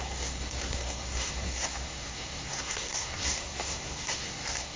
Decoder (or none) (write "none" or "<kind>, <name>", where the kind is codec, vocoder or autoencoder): codec, SNAC